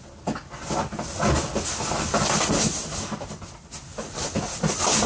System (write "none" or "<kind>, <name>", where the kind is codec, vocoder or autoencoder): none